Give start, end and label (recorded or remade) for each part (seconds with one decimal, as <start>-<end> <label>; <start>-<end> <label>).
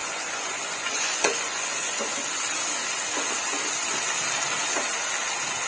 0.0-2.1 remade; 2.1-5.7 recorded